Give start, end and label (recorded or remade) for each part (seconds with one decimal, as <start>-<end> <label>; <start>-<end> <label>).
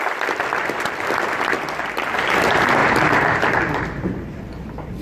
0.0-5.0 recorded